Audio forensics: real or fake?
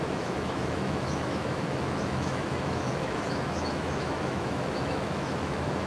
fake